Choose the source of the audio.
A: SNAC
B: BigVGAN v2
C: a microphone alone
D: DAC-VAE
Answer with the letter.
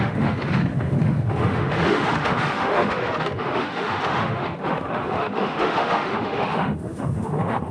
D